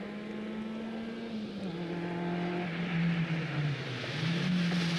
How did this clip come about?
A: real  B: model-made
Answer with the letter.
A